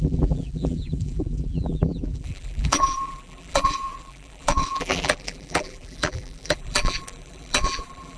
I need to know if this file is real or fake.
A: fake